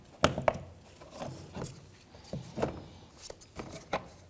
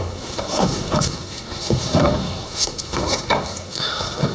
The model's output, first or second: second